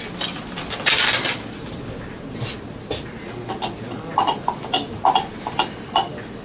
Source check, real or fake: real